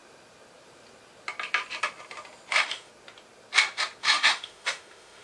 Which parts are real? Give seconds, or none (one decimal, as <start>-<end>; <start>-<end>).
0.0-2.5; 2.9-4.0